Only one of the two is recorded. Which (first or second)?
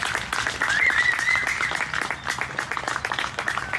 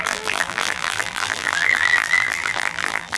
first